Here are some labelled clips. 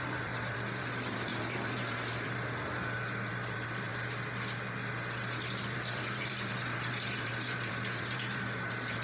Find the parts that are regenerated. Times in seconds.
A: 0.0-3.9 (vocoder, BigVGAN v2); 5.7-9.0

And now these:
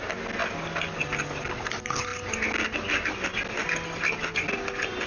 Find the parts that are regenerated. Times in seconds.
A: none

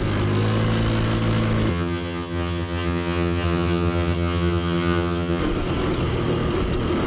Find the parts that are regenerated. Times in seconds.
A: 1.7-5.4 (vocoder, HiFi-GAN)

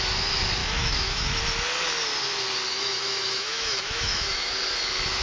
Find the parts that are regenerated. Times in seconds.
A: 0.6-1.4 (autoencoder, DAC-VAE); 2.7-4.5

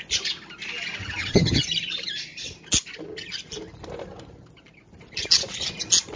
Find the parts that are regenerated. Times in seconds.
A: 1.0-1.6 (vocoder, HiFi-GAN)